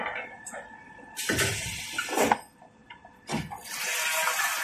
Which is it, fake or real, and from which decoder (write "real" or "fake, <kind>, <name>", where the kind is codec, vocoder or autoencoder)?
real